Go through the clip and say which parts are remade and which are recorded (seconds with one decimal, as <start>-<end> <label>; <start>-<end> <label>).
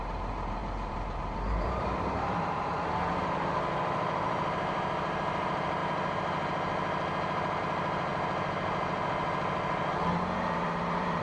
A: 0.0-5.8 remade; 5.8-7.6 recorded; 7.6-11.2 remade